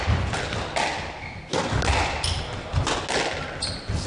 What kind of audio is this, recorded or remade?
recorded